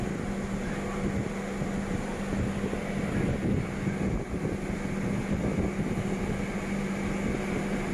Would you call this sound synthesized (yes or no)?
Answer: no